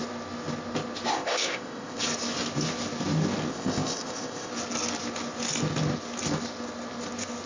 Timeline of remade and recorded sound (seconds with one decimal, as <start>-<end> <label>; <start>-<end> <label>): 0.0-1.1 recorded; 1.1-2.0 remade; 2.0-3.5 recorded; 3.5-4.5 remade; 4.5-7.5 recorded